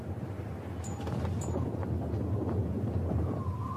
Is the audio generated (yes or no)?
no